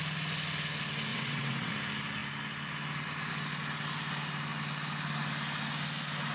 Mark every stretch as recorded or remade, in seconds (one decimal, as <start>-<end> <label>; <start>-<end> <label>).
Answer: 0.0-1.1 recorded; 1.1-1.7 remade; 1.7-6.3 recorded